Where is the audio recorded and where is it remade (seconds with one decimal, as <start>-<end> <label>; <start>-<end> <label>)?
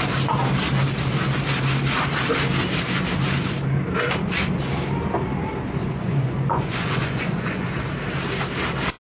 0.0-5.8 recorded; 5.8-7.7 remade; 7.7-9.2 recorded